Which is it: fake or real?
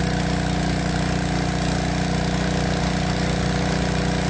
real